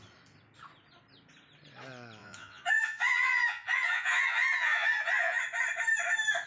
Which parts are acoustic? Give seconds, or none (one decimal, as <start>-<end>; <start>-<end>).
0.0-2.2; 5.4-6.5